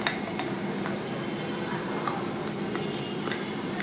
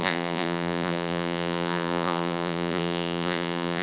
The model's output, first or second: second